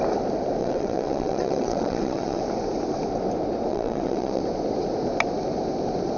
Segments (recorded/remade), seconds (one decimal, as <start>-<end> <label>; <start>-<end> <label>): 0.0-0.6 recorded; 0.6-2.4 remade; 2.4-3.7 recorded; 3.7-4.4 remade; 4.4-6.2 recorded